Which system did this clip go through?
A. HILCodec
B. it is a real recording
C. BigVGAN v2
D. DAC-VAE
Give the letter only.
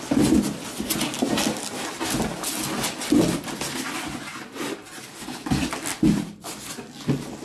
B